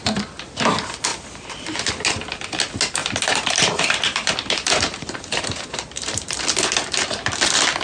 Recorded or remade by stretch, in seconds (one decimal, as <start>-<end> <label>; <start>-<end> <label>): 0.0-1.1 recorded; 1.1-1.9 remade; 1.9-3.0 recorded; 3.0-6.4 remade; 6.4-7.8 recorded